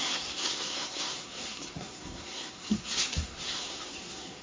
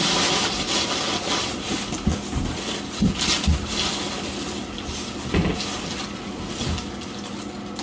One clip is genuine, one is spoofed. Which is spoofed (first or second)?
first